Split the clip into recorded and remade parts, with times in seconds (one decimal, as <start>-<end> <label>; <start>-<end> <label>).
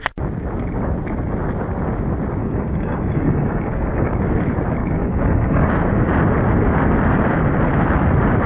0.0-2.4 recorded; 2.4-4.2 remade; 4.2-4.8 recorded; 4.8-5.7 remade; 5.7-8.5 recorded